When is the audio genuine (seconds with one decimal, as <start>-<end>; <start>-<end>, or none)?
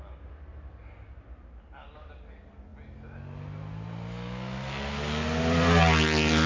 0.0-6.5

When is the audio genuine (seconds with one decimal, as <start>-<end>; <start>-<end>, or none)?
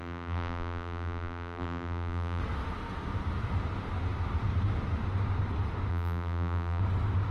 2.4-5.9; 6.8-7.3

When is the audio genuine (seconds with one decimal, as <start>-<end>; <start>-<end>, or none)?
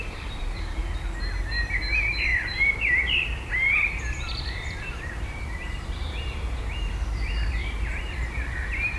0.8-1.4